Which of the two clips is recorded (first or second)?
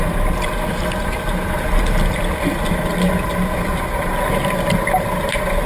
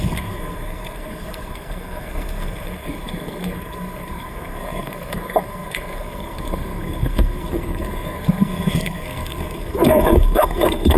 first